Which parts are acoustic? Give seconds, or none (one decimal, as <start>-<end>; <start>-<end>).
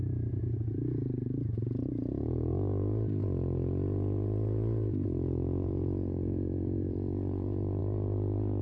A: 7.8-8.6